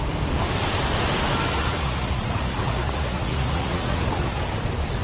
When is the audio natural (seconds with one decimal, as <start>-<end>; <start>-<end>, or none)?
0.0-1.5; 4.4-5.0